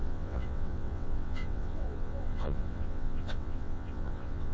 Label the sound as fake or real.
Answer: fake